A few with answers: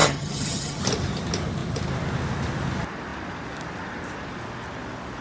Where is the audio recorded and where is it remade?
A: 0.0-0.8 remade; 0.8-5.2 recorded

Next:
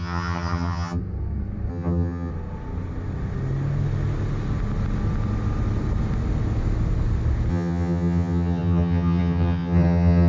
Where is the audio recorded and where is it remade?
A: 0.0-1.0 remade; 1.0-1.7 recorded; 1.7-2.3 remade; 2.3-7.5 recorded; 7.5-10.3 remade

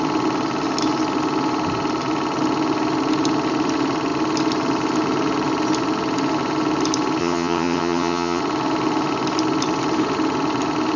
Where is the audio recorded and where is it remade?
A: 0.0-7.2 recorded; 7.2-8.4 remade; 8.4-11.0 recorded

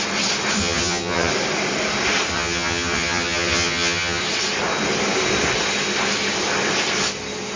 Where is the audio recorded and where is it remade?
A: 0.0-0.6 recorded; 0.6-1.3 remade; 1.3-2.3 recorded; 2.3-4.2 remade; 4.2-7.6 recorded

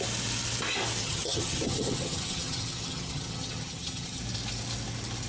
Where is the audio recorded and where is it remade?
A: 0.0-1.0 recorded; 1.0-4.2 remade; 4.2-5.3 recorded